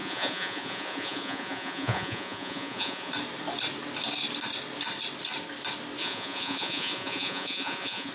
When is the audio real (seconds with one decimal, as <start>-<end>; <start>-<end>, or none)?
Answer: 3.1-6.0